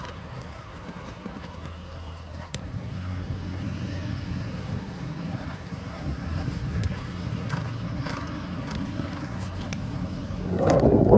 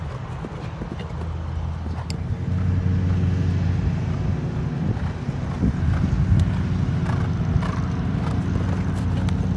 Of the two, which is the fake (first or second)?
first